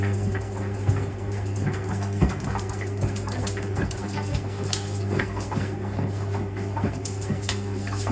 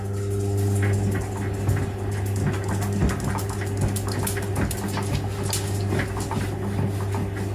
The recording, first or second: second